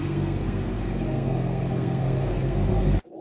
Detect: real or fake fake